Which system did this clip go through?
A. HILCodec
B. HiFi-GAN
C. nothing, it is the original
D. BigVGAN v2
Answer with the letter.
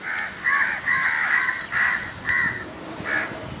D